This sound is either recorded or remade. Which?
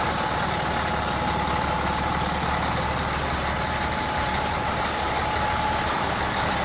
remade